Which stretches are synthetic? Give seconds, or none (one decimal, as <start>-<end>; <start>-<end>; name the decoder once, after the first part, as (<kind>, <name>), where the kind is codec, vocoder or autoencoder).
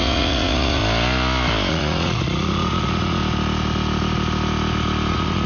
0.0-0.8 (vocoder, Vocos); 1.7-3.2; 5.1-5.5